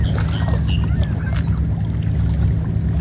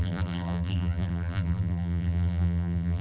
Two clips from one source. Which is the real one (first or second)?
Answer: first